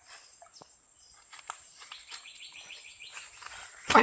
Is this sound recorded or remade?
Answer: recorded